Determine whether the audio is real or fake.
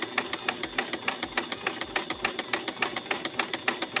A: real